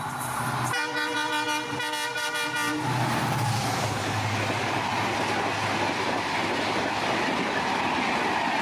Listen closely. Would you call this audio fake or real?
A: real